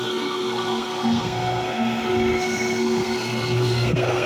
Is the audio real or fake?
fake